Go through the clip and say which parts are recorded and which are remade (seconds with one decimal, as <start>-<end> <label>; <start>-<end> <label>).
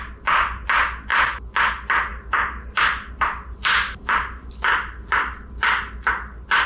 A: 0.0-2.1 recorded; 2.1-6.1 remade; 6.1-6.7 recorded